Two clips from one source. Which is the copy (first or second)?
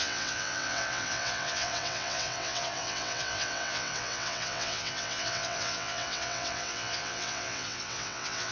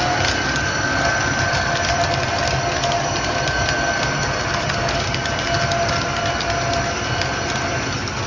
first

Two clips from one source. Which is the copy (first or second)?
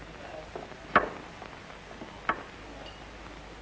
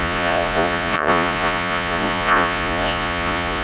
second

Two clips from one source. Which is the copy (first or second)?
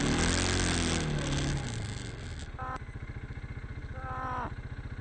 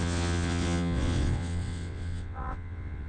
second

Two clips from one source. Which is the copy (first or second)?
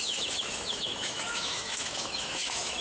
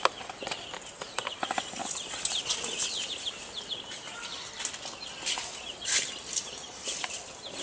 first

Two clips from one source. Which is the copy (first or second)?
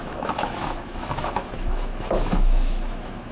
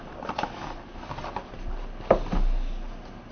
first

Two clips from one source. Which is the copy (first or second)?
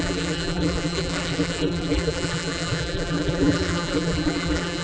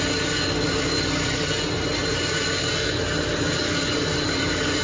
first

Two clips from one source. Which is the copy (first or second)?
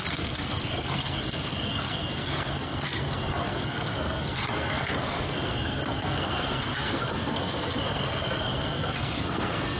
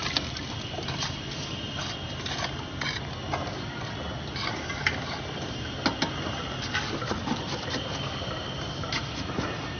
first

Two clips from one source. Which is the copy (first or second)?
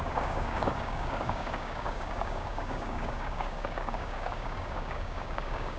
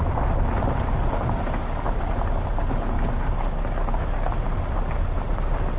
first